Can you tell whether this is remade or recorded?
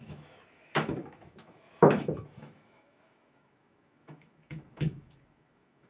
remade